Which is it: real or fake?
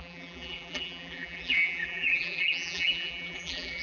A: fake